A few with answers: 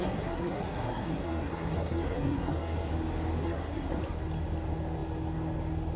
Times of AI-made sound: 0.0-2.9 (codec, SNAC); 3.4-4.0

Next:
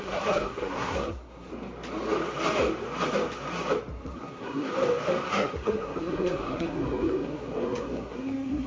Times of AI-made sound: 0.0-1.5 (codec, SNAC); 3.9-4.7; 5.3-8.7

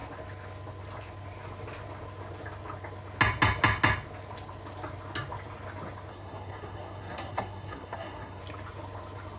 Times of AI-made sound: 6.1-8.4 (codec, SNAC)

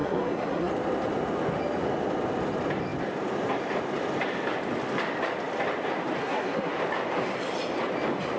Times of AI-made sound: 0.0-0.7 (codec, SNAC); 6.2-6.7